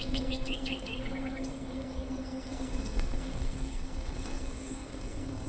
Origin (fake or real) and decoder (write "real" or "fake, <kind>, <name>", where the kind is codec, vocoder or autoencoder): fake, codec, SNAC